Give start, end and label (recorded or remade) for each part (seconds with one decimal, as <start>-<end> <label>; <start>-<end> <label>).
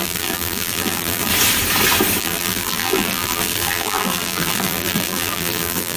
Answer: 0.0-1.3 remade; 1.3-2.2 recorded; 2.2-6.0 remade